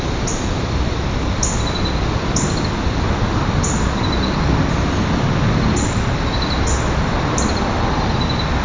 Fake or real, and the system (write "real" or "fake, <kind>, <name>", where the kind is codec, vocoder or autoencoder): real